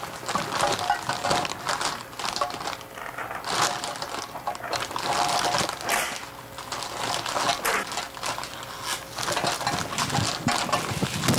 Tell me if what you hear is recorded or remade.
recorded